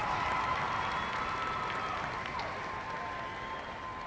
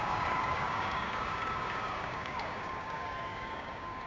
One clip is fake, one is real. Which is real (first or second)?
first